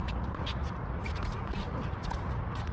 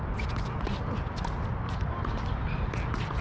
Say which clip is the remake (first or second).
first